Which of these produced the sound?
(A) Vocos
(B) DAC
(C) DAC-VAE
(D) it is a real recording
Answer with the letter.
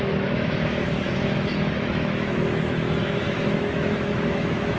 C